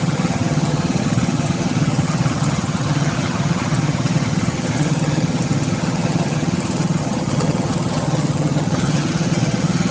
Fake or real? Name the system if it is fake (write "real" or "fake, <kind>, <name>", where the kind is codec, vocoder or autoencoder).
fake, vocoder, HiFi-GAN